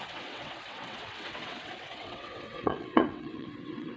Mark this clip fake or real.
fake